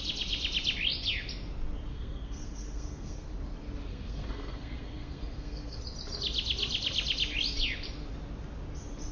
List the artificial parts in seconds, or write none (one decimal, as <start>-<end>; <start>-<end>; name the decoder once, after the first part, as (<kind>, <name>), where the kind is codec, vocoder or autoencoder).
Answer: 1.9-3.3 (codec, SNAC); 3.9-5.8